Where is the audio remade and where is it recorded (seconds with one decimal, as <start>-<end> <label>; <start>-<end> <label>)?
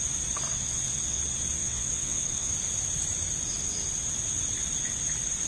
0.0-0.5 recorded; 0.5-1.2 remade; 1.2-1.6 recorded; 1.6-2.5 remade; 2.5-5.5 recorded